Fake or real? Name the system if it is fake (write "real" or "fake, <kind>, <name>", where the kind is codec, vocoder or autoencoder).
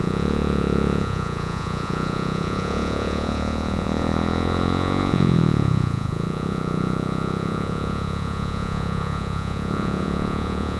fake, vocoder, Vocos